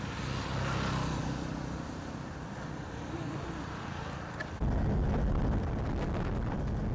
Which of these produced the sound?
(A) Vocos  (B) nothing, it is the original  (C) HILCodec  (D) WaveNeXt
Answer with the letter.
B